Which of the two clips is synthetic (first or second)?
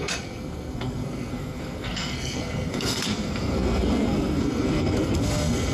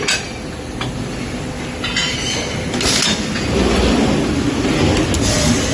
first